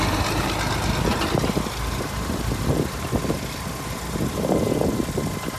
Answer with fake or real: real